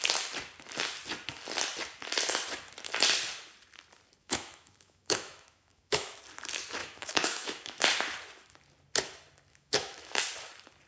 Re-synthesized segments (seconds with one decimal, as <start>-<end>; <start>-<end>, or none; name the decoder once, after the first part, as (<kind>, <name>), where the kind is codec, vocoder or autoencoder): 4.2-6.2 (autoencoder, DAC-VAE); 6.8-7.8; 9.5-10.2